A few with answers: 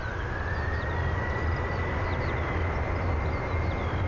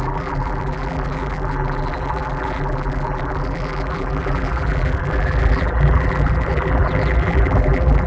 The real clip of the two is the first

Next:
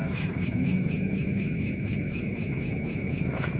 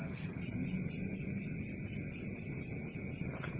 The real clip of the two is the second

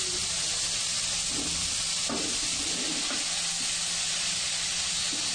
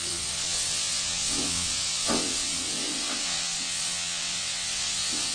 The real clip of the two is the first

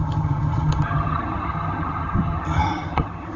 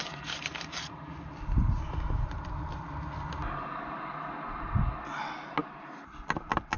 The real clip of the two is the second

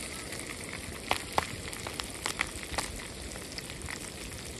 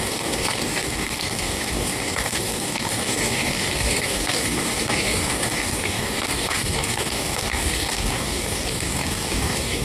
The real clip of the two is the first